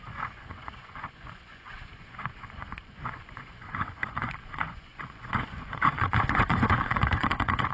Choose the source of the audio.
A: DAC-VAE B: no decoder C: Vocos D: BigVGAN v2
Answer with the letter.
C